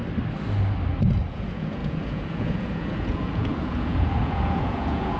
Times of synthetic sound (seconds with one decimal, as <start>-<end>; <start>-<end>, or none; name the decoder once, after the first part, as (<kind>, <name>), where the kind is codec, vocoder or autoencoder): 1.3-5.2 (vocoder, Vocos)